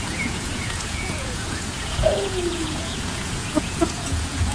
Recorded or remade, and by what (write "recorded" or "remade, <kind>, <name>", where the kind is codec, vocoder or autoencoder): remade, vocoder, Vocos